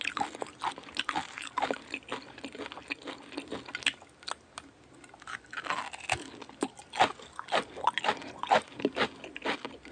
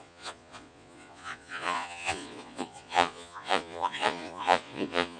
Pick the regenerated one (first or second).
second